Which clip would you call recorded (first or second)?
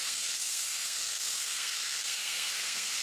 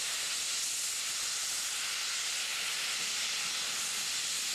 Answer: second